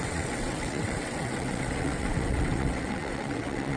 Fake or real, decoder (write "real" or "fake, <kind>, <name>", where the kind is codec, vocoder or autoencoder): fake, vocoder, WaveNeXt